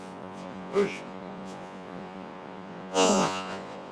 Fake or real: fake